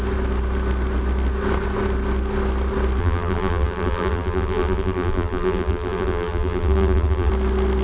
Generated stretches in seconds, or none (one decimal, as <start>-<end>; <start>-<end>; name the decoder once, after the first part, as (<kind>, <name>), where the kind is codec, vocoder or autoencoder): 3.0-7.3 (vocoder, BigVGAN v2)